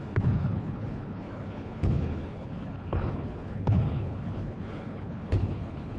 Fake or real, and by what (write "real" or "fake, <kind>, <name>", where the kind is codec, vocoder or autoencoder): fake, codec, HILCodec